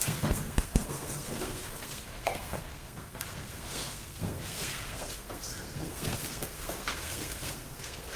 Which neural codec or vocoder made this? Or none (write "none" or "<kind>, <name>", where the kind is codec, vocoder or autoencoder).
codec, SNAC